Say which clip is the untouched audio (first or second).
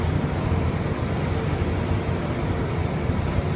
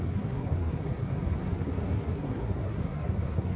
first